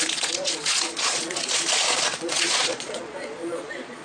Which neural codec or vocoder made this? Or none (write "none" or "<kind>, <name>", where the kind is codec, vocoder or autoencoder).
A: vocoder, Vocos